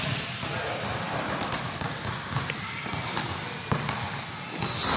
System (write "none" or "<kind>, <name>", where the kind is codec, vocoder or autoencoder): none